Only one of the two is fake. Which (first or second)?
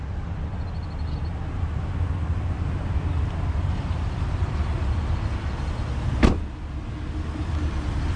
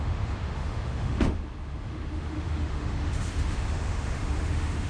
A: second